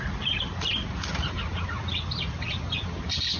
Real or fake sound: real